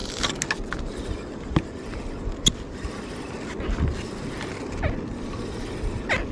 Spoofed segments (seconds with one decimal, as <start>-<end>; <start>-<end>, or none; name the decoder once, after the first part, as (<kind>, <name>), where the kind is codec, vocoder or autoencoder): none